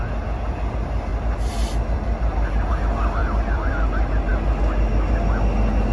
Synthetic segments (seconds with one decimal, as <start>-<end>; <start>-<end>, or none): 1.1-2.7; 3.2-3.7